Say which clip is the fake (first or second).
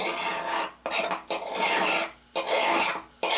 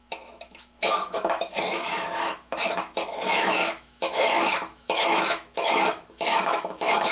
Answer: second